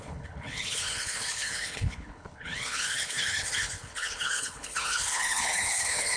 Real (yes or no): no